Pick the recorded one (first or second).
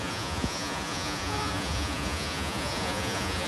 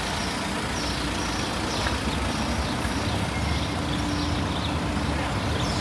second